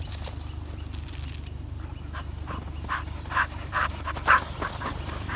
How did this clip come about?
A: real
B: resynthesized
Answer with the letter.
A